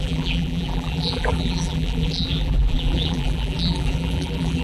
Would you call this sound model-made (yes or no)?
yes